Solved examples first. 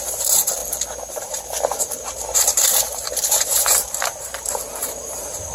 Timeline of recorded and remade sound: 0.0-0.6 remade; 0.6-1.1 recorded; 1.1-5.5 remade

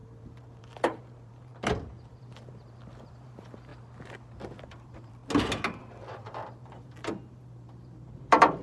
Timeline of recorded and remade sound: 0.0-1.5 remade; 1.5-2.1 recorded; 2.1-3.7 remade; 3.7-4.6 recorded; 4.6-5.2 remade; 5.2-5.8 recorded; 5.8-8.6 remade